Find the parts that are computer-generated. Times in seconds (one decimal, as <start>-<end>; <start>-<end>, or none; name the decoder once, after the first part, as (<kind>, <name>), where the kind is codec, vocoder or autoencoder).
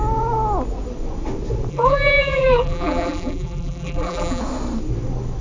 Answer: 1.7-4.4 (vocoder, BigVGAN v2)